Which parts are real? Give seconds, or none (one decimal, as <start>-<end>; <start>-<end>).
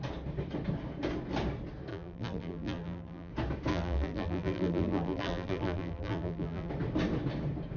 0.0-1.9; 3.3-3.7; 6.7-7.8